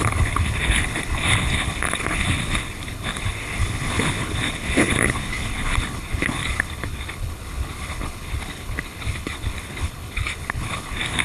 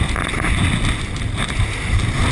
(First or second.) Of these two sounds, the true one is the second